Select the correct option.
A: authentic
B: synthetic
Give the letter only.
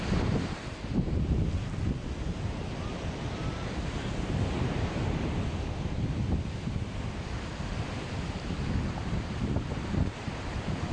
A